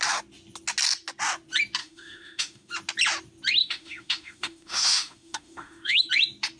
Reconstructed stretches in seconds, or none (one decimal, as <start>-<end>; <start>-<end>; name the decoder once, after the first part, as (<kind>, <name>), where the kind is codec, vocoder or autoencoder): 1.8-2.7 (autoencoder, DAC-VAE); 3.6-6.1